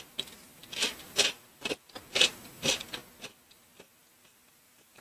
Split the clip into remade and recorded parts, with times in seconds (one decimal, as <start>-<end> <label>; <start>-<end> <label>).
0.0-5.0 recorded

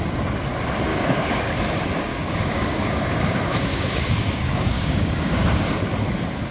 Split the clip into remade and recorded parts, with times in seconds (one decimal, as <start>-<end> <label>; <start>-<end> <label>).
0.0-0.9 recorded; 0.9-1.5 remade; 1.5-2.1 recorded; 2.1-5.7 remade; 5.7-6.5 recorded

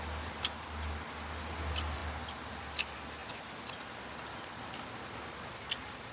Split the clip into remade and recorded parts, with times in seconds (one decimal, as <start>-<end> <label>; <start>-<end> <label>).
0.0-6.1 recorded

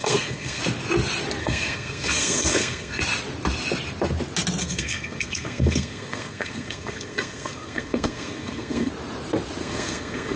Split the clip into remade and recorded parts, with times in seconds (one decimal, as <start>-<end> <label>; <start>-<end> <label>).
0.0-0.6 remade; 0.6-1.4 recorded; 1.4-3.0 remade; 3.0-4.6 recorded; 4.6-8.9 remade; 8.9-9.6 recorded; 9.6-10.4 remade

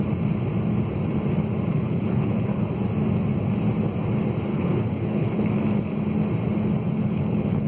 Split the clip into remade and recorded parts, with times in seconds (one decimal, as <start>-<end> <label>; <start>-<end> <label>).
0.0-1.7 recorded; 1.7-2.7 remade; 2.7-4.5 recorded; 4.5-5.5 remade; 5.5-7.0 recorded; 7.0-7.7 remade